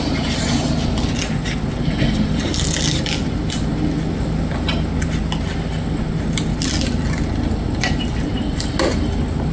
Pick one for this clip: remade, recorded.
recorded